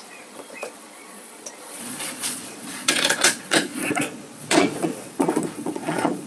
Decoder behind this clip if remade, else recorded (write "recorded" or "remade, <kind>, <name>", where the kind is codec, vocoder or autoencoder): remade, vocoder, Vocos